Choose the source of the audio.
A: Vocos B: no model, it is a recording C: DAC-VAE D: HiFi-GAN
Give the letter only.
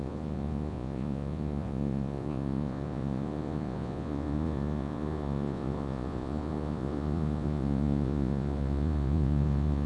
A